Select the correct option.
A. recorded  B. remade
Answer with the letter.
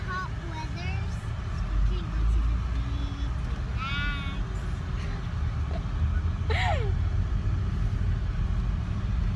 A